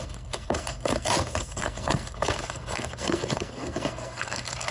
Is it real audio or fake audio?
fake